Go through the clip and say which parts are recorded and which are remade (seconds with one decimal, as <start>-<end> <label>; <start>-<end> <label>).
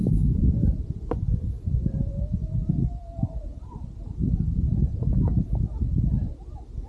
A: 0.0-3.7 remade; 3.7-4.2 recorded; 4.2-6.2 remade; 6.2-6.9 recorded